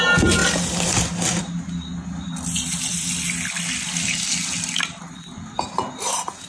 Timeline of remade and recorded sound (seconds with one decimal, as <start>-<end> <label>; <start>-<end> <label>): 0.0-6.5 recorded